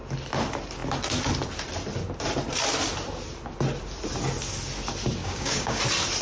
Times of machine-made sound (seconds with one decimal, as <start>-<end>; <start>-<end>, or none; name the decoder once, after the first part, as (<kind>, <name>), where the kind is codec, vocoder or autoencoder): 5.2-5.8 (codec, DAC)

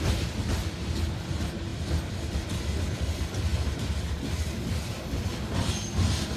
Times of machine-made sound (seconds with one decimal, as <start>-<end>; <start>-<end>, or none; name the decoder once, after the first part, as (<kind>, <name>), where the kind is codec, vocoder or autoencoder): 0.0-6.4 (vocoder, BigVGAN v2)

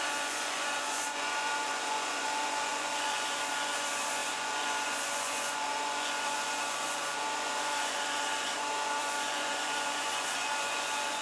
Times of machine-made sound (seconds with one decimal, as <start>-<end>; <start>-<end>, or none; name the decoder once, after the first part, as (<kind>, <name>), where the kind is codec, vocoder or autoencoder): 0.0-11.2 (vocoder, Vocos)

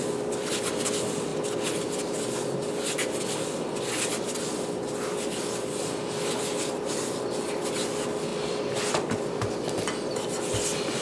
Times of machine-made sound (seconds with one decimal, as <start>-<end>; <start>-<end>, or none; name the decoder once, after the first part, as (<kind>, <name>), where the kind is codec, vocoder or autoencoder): none

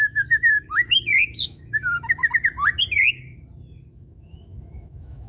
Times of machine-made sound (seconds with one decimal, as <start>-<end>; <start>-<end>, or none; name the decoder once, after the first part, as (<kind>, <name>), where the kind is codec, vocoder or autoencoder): 0.0-2.2 (autoencoder, DAC-VAE); 3.9-5.3